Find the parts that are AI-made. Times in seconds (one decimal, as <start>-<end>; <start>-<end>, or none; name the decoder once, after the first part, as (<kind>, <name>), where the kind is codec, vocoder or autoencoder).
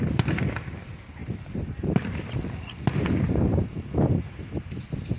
none